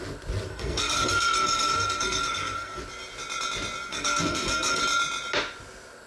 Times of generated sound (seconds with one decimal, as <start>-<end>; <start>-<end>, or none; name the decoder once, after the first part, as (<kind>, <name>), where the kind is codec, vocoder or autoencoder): 0.5-2.8 (codec, SNAC); 3.9-4.8